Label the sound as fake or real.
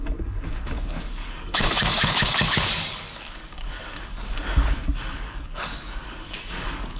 fake